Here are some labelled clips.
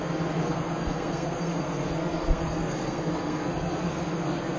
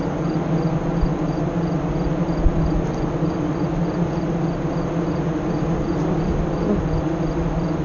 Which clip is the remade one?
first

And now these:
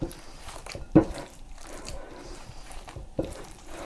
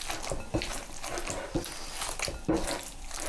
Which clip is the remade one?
first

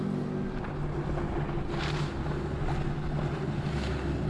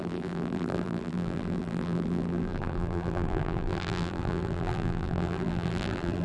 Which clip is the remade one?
second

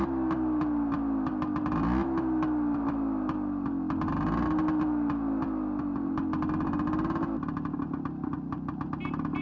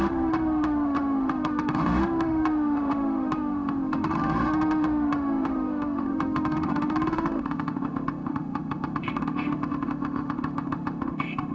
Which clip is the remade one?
second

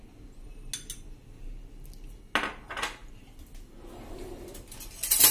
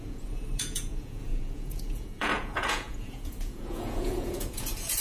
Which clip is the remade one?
second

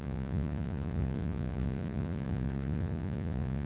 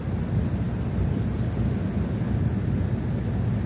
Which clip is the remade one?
first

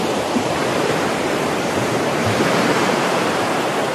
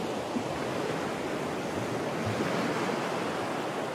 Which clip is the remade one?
first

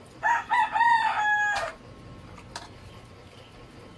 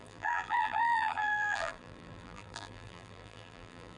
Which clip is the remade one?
second